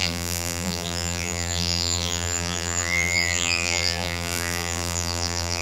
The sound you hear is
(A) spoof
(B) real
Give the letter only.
A